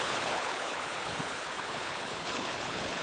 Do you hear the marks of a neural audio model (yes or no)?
yes